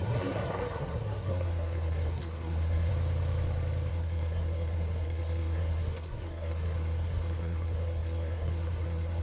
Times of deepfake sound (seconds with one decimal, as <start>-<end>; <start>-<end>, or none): 0.0-2.9; 3.9-9.2